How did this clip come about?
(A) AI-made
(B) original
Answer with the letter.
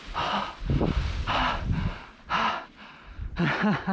B